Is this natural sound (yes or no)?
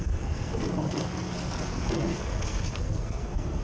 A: no